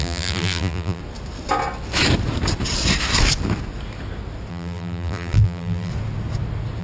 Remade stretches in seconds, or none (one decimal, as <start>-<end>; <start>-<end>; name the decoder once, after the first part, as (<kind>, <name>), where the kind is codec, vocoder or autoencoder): 0.0-1.0 (vocoder, BigVGAN v2); 4.5-5.9